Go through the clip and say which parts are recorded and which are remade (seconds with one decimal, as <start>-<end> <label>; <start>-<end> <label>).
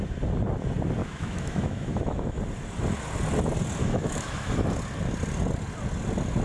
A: 0.0-1.0 recorded; 1.0-2.4 remade; 2.4-3.8 recorded; 3.8-4.5 remade; 4.5-6.4 recorded